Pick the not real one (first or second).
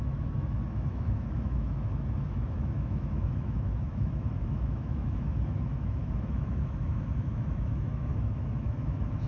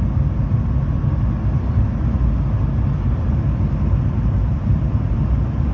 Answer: first